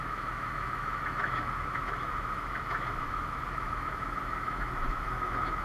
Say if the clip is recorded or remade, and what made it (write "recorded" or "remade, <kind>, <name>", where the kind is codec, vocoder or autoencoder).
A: remade, autoencoder, DAC-VAE